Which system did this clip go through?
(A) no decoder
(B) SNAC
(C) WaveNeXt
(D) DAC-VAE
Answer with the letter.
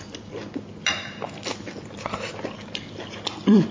A